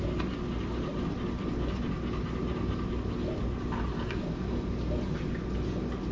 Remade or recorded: recorded